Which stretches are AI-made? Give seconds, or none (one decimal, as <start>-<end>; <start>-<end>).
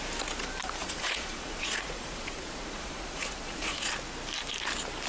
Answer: 0.8-3.9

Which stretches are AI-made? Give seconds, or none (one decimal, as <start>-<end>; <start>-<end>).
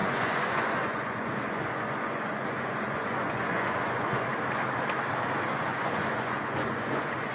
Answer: 0.0-4.3; 5.5-7.3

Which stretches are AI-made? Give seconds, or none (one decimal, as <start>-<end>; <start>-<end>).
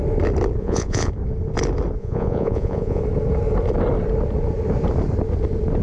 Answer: 0.6-1.1; 2.0-3.0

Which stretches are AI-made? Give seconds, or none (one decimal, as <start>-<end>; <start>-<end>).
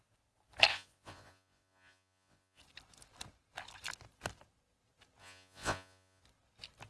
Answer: 0.7-2.6; 5.2-6.2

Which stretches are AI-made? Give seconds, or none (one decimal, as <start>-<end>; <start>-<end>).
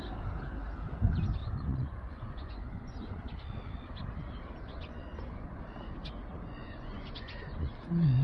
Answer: 1.4-3.2; 4.7-5.6; 6.6-7.7